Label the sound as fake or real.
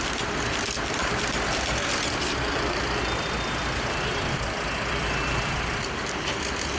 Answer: fake